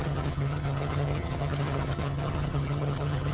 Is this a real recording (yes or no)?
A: no